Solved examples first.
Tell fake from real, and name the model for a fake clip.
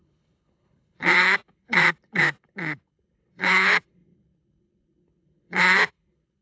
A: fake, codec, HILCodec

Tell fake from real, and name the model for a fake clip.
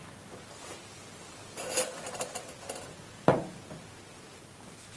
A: real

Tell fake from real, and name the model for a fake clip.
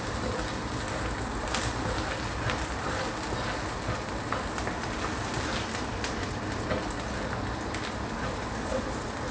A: real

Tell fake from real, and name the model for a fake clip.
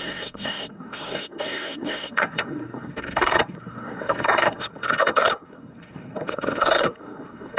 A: fake, codec, SNAC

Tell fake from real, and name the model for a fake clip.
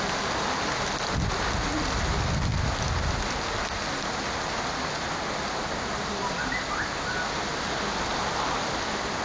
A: real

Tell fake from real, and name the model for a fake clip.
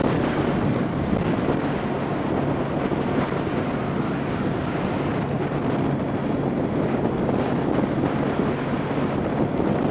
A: real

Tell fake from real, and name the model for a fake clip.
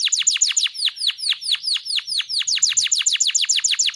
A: real